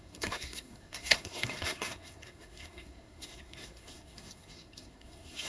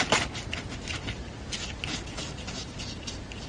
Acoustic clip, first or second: second